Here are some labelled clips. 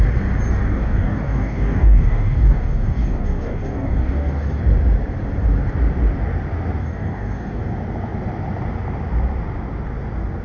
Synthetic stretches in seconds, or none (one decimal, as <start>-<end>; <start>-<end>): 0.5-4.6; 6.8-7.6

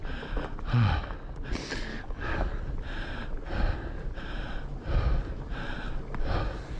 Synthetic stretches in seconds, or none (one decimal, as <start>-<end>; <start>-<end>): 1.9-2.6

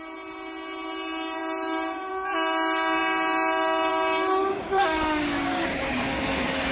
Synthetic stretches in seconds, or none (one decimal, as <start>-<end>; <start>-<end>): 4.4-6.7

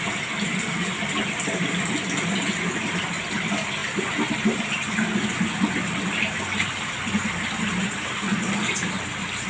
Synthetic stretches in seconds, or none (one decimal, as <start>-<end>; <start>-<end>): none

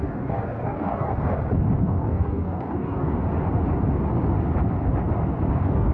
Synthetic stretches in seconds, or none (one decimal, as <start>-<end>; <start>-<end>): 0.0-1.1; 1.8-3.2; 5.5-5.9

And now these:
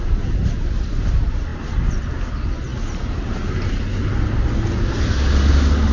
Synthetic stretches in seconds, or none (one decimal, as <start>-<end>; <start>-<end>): none